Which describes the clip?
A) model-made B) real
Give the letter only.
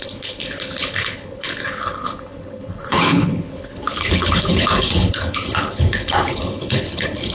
A